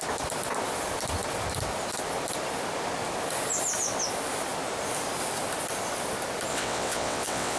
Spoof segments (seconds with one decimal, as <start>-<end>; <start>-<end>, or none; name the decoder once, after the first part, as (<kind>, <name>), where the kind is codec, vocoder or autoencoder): 6.5-7.6 (vocoder, WaveNeXt)